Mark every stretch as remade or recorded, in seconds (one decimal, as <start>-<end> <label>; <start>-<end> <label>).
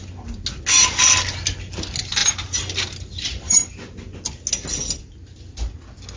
0.0-6.2 recorded